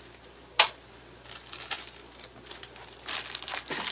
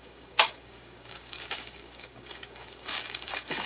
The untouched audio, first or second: first